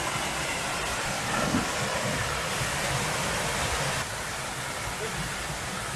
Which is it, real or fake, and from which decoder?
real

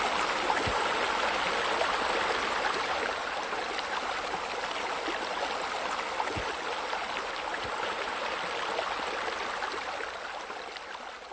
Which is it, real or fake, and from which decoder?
real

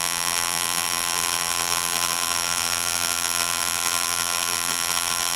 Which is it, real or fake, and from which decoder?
fake, vocoder, BigVGAN v2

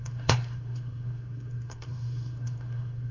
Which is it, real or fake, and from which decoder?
fake, codec, SNAC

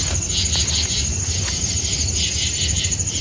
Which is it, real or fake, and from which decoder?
real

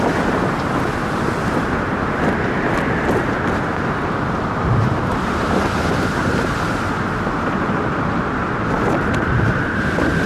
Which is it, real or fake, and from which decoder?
real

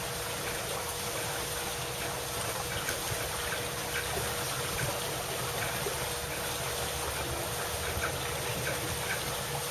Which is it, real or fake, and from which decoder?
real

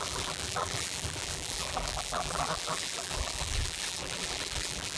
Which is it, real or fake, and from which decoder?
fake, vocoder, BigVGAN v2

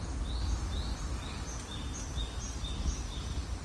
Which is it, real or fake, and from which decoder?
real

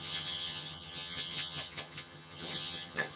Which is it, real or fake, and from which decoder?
fake, vocoder, HiFi-GAN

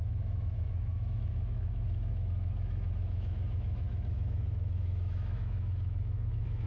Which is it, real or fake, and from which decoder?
fake, autoencoder, DAC-VAE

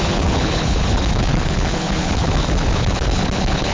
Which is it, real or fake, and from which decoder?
fake, codec, HILCodec